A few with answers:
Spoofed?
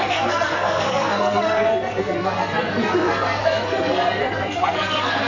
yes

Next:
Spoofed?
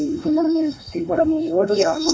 yes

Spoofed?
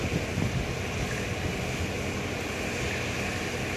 no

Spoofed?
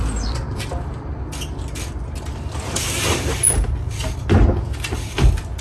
no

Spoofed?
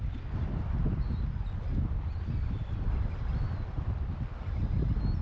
no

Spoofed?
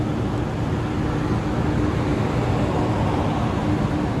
no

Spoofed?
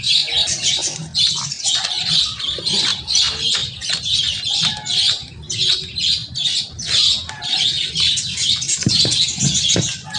no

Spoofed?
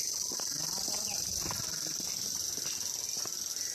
no